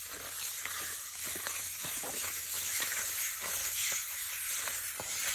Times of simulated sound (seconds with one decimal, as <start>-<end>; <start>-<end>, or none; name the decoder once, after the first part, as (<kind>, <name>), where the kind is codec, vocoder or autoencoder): 0.9-3.1 (autoencoder, DAC-VAE); 3.6-4.3